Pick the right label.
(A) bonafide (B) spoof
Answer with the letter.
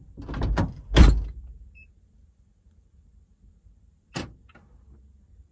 A